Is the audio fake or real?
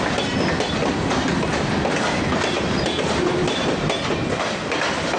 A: real